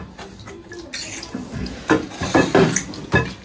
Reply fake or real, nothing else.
real